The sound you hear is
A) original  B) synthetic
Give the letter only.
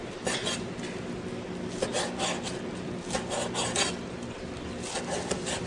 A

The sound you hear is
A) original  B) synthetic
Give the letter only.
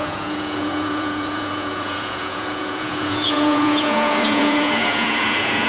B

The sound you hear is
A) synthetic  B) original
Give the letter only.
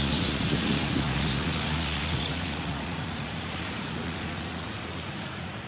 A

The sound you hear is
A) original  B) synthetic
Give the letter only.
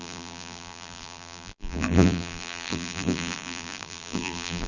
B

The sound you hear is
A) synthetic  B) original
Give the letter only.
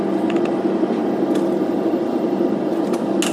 B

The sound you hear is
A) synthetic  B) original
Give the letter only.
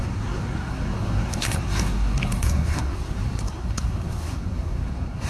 A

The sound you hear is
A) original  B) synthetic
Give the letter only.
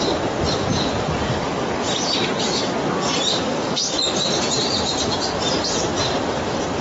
A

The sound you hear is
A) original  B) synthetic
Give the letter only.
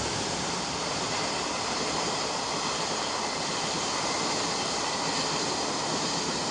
A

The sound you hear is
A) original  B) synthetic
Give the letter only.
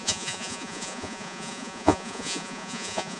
B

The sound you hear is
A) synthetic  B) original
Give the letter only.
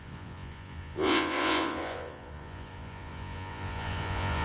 A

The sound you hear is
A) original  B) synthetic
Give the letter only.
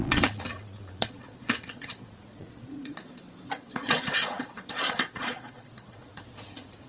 B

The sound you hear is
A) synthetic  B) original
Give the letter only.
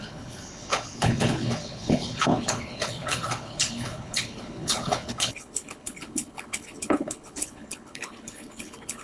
A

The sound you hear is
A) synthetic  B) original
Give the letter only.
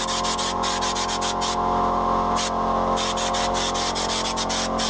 B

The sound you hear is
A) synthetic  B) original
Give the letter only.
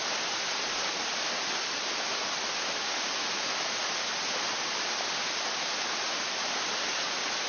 B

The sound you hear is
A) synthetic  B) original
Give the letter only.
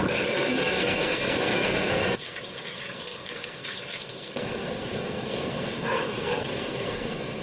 A